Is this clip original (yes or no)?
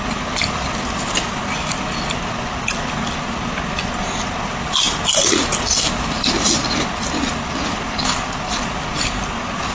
yes